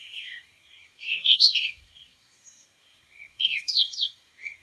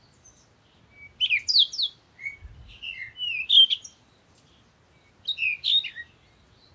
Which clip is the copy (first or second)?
first